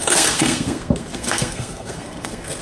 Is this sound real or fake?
fake